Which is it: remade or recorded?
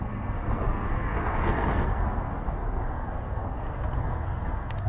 remade